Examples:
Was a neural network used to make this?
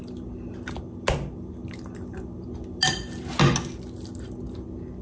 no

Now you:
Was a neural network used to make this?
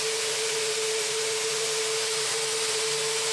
no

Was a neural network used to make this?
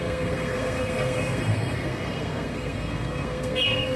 yes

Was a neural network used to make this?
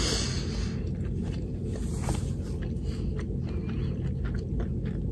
no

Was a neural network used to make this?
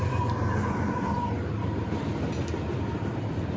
yes